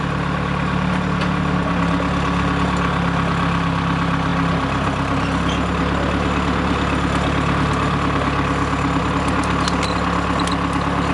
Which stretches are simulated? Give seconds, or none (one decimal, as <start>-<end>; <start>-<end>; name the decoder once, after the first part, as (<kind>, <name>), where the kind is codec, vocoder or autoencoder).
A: none